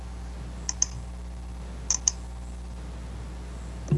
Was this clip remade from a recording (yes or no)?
no